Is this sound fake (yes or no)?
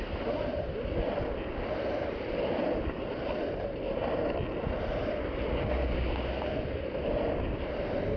no